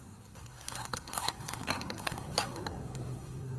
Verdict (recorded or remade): remade